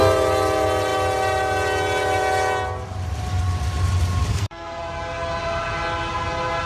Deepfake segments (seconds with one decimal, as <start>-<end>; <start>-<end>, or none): 4.3-4.8